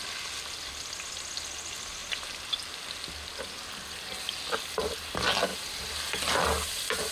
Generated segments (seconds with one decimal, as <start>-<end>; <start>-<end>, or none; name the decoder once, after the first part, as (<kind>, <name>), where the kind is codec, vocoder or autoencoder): none